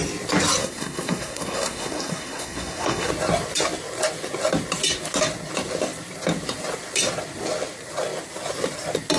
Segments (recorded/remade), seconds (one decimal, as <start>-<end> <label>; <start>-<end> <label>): 0.0-0.6 recorded; 0.6-3.1 remade; 3.1-9.2 recorded